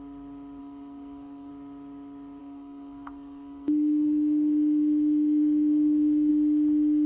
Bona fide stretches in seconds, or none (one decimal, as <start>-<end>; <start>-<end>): 0.0-0.6; 1.5-2.4; 6.3-7.1